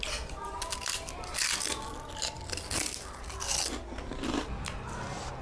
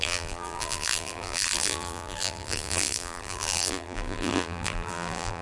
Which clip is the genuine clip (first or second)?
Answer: first